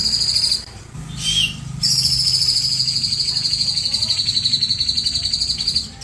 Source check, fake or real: real